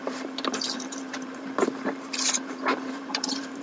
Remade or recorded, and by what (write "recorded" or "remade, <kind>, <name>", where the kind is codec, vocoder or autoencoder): remade, vocoder, BigVGAN v2